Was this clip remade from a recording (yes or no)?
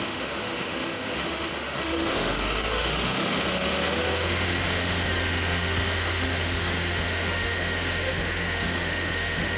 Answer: yes